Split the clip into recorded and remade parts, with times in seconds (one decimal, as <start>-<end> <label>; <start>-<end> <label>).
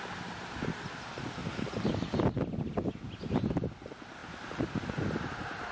0.0-1.4 recorded; 1.4-2.7 remade; 2.7-5.7 recorded